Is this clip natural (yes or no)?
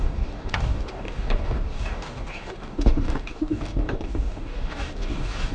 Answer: no